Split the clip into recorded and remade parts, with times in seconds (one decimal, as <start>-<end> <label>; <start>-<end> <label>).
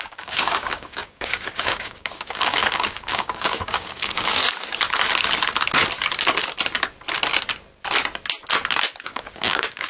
0.0-4.4 remade; 4.4-9.0 recorded; 9.0-9.9 remade